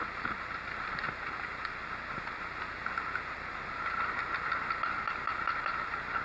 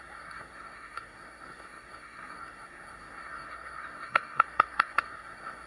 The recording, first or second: first